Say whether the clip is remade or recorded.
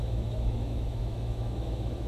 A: remade